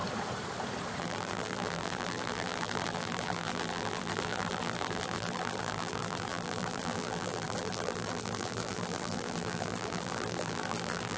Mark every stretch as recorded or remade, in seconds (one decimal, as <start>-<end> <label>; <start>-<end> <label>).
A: 0.0-1.0 recorded; 1.0-11.2 remade